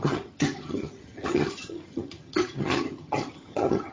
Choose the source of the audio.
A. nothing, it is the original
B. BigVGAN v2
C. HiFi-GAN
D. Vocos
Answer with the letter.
C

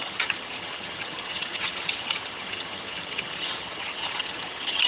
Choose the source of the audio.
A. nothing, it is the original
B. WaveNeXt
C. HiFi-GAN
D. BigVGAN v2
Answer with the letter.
C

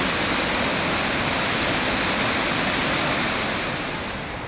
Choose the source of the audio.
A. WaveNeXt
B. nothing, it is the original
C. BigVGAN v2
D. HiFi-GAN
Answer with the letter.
B